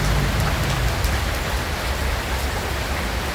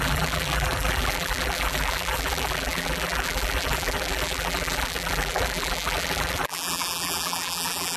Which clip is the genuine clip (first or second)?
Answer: first